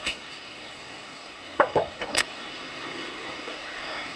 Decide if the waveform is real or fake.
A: fake